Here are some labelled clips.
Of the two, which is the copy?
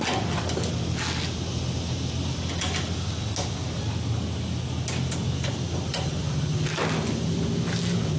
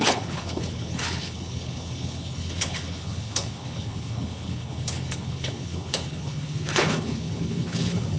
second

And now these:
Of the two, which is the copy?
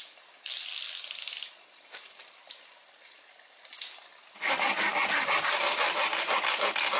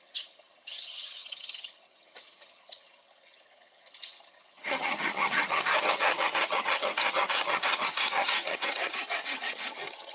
second